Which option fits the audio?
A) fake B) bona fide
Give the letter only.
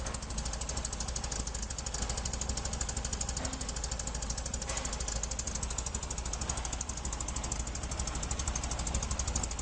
B